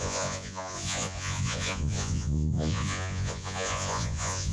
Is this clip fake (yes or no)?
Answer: yes